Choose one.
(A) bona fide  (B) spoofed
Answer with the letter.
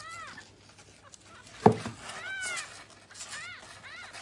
A